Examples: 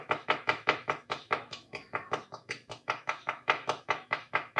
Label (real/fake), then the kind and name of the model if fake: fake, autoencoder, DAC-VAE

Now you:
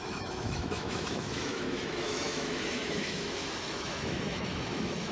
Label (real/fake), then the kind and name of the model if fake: fake, autoencoder, DAC-VAE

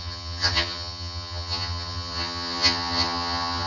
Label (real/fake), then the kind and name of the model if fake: fake, vocoder, HiFi-GAN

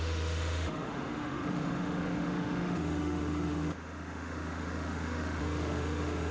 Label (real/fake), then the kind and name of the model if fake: fake, autoencoder, DAC-VAE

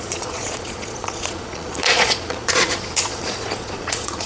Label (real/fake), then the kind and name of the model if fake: fake, vocoder, Vocos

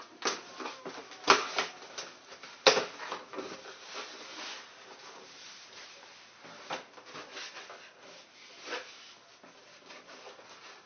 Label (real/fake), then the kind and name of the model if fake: real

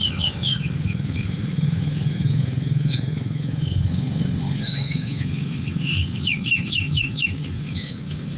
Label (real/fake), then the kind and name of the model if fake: fake, autoencoder, DAC-VAE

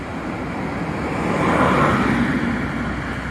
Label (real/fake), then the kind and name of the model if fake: real